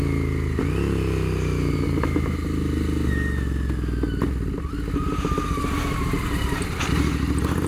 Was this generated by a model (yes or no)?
no